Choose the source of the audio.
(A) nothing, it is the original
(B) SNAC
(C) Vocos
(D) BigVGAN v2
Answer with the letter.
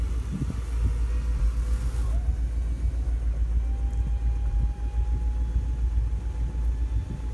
A